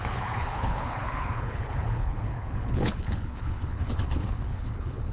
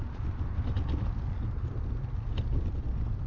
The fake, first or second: first